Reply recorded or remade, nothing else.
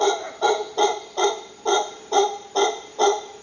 recorded